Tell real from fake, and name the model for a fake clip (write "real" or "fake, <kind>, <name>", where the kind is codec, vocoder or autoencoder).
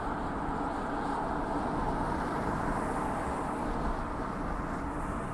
real